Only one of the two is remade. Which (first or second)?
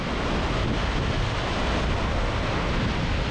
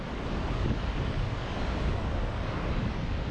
second